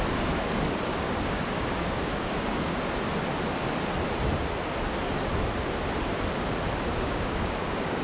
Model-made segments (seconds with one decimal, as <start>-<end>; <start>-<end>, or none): 0.9-2.5; 6.9-8.0